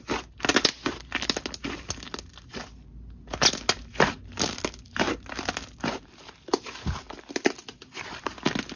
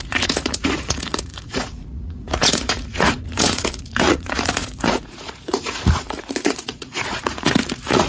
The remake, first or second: second